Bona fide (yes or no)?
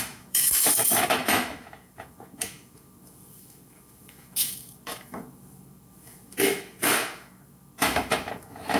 no